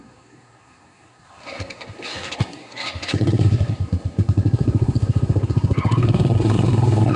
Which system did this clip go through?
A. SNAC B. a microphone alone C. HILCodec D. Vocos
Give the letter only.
A